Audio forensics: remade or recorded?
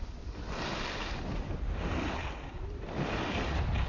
recorded